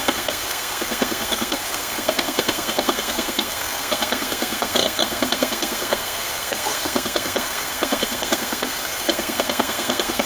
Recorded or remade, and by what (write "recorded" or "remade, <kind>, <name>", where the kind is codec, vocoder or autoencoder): remade, codec, SNAC